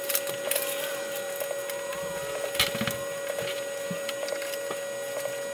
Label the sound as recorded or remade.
recorded